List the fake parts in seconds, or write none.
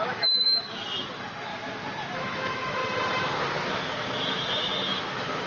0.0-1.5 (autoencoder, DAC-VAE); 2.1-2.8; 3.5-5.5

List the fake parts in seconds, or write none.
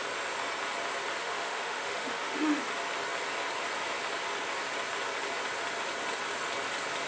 1.2-2.6 (autoencoder, DAC-VAE)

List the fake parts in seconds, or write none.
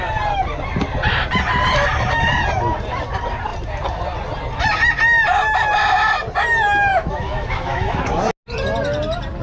6.9-8.0 (autoencoder, DAC-VAE)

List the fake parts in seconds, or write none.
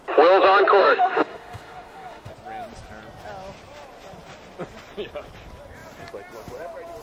0.8-2.3 (autoencoder, DAC-VAE)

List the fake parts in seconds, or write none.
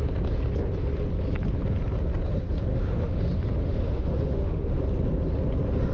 2.7-3.2 (autoencoder, DAC-VAE); 3.6-4.8